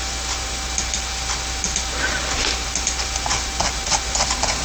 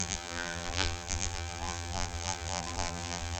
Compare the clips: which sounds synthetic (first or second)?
second